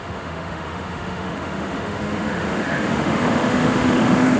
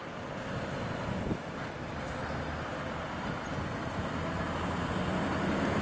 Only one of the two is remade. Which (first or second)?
first